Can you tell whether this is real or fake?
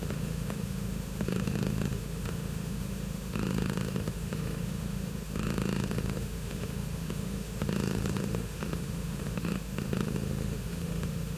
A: fake